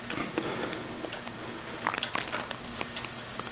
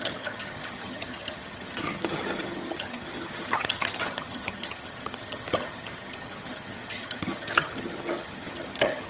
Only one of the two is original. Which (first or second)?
first